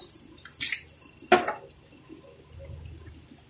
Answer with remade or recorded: recorded